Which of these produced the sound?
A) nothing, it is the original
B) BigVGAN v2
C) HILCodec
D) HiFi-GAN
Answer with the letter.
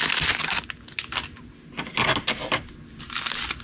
A